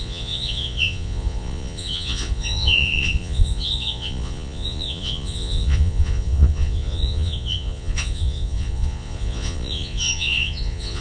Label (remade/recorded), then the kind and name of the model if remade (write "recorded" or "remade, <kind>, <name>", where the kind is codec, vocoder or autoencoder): remade, vocoder, Vocos